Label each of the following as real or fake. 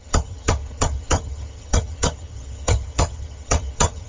fake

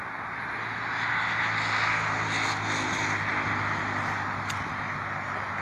real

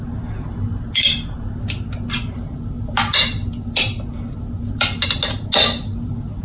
real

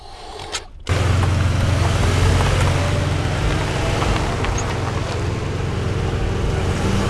real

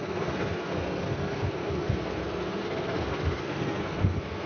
fake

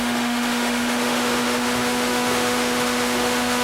fake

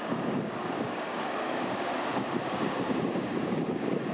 fake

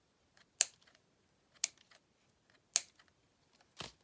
real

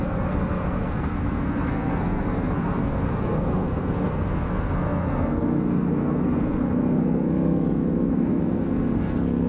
fake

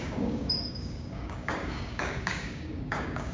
fake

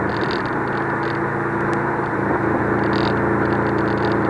real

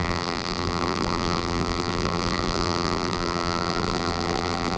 fake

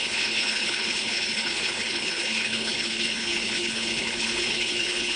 fake